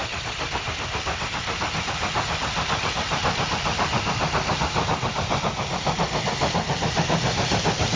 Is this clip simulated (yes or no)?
no